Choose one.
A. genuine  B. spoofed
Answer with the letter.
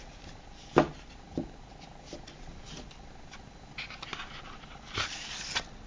A